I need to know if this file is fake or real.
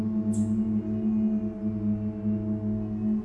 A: real